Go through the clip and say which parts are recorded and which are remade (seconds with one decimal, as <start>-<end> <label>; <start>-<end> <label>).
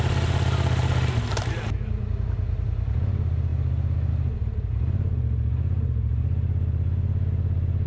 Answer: 0.0-7.9 recorded